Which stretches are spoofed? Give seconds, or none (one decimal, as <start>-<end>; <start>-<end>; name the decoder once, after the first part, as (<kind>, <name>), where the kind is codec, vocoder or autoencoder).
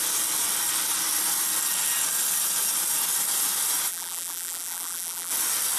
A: 3.9-5.3 (vocoder, BigVGAN v2)